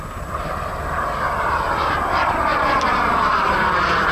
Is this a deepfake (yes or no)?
no